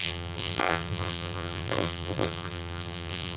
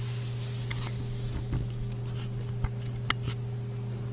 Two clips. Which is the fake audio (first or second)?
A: first